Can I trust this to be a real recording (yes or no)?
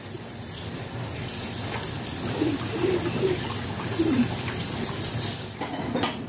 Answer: yes